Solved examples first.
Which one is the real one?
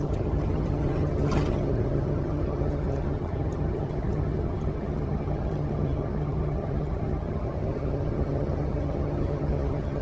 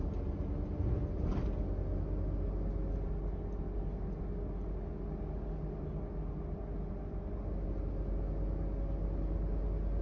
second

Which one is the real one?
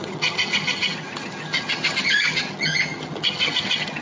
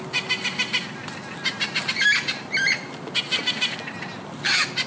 second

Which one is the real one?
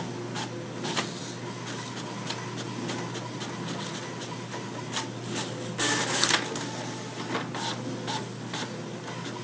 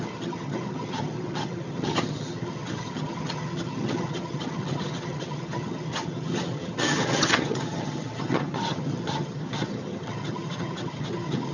first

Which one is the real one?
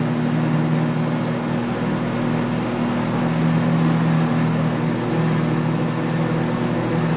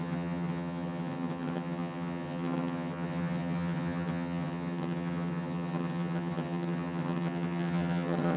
first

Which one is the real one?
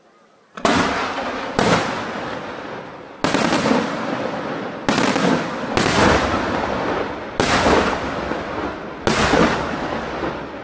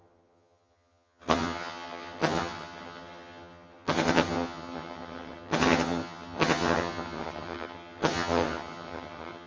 first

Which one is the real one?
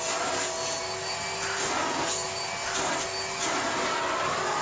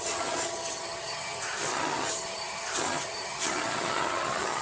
first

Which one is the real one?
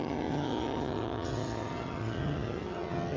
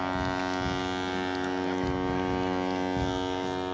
second